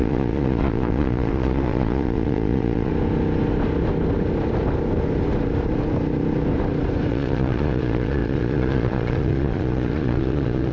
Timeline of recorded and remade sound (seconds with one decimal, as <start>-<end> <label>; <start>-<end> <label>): 0.0-2.9 remade; 2.9-7.1 recorded; 7.1-10.7 remade